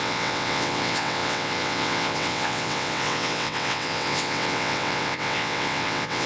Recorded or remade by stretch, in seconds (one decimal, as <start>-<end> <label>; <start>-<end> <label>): 0.0-6.3 remade